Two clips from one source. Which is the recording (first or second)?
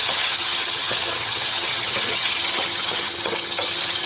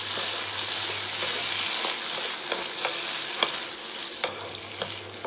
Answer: second